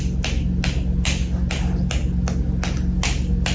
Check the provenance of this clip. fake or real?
real